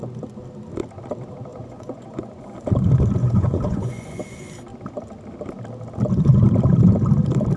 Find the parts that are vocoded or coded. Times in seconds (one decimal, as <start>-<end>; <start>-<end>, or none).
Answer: 1.5-2.4; 3.2-4.2